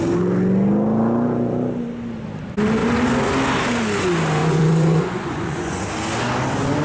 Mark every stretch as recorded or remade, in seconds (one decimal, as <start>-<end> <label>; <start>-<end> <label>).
0.0-4.4 recorded; 4.4-5.8 remade; 5.8-6.8 recorded